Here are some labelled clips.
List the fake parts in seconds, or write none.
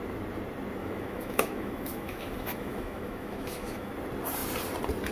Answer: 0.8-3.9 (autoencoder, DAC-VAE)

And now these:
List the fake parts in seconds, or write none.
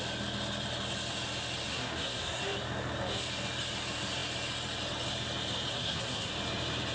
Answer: 1.7-2.4 (codec, SNAC); 5.7-6.3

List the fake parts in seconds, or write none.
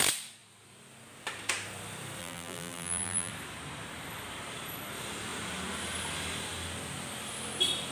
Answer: 2.2-3.3 (vocoder, BigVGAN v2)